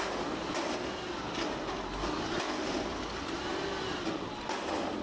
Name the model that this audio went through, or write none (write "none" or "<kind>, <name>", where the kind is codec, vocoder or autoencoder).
none